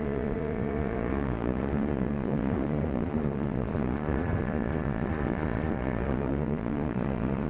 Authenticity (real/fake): fake